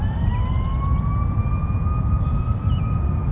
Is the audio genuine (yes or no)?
yes